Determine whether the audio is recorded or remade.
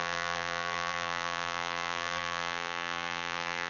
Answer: remade